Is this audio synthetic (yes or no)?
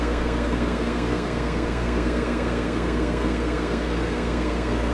yes